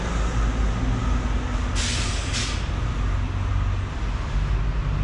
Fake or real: real